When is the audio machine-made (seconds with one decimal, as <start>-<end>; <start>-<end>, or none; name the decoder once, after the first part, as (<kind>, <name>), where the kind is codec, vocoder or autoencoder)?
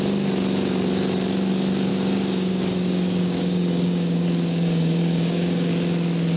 1.9-5.7 (codec, DAC)